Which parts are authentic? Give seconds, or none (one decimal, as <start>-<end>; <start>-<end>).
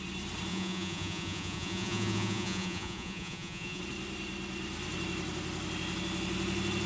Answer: 0.0-0.5; 3.8-6.9